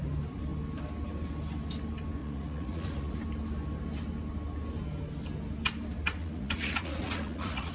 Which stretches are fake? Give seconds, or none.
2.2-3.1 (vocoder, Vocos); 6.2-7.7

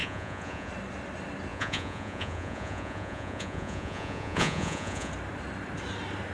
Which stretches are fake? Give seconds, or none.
0.0-0.7 (vocoder, Vocos); 1.5-5.1

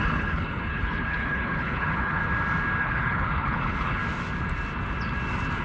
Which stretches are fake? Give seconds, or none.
0.0-2.2 (codec, HILCodec); 2.8-4.0